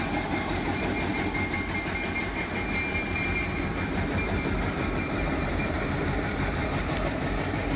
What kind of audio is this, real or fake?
fake